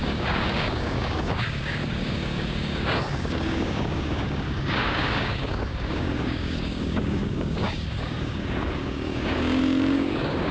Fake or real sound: fake